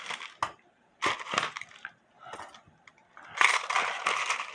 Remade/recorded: recorded